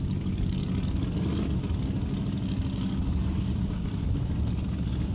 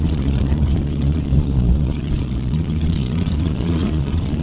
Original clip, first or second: first